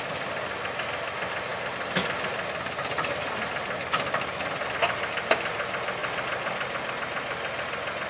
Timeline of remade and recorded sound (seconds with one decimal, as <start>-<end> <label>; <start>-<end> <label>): 0.0-8.1 recorded